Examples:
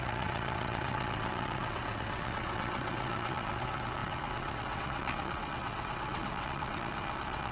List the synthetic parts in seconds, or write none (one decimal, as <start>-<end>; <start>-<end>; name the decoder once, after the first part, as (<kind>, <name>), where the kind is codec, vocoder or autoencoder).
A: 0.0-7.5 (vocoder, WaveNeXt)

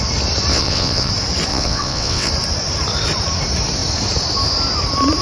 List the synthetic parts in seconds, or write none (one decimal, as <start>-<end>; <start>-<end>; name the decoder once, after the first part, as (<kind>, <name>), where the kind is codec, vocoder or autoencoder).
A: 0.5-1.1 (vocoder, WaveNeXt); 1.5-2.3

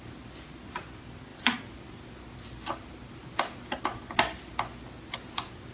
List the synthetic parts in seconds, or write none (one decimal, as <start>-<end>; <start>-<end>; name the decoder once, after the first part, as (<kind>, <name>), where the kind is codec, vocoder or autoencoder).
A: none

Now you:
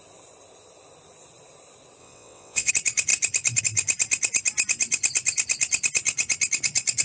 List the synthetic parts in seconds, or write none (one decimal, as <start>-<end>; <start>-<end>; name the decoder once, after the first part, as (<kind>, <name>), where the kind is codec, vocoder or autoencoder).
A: 2.0-2.7 (vocoder, WaveNeXt)

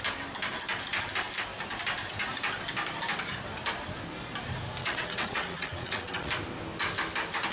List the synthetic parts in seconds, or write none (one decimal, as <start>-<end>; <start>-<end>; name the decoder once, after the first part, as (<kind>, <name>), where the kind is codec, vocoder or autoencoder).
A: 4.8-6.3 (vocoder, WaveNeXt)

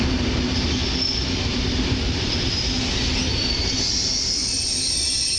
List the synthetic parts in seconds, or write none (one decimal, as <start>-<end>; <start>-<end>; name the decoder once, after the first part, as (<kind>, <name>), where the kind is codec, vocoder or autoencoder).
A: none

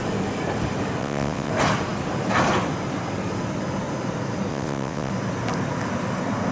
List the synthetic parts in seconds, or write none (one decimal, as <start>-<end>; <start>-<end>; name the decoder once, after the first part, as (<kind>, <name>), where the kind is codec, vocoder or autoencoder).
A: 1.0-1.5 (vocoder, WaveNeXt); 4.5-5.1